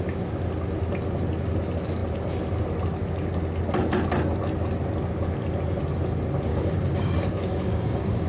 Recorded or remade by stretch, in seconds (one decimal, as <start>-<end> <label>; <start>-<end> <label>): 0.0-6.5 recorded; 6.5-8.3 remade